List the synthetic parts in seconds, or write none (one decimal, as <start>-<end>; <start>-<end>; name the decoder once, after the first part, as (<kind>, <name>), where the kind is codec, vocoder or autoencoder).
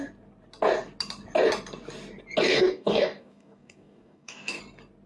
2.5-4.6 (codec, DAC)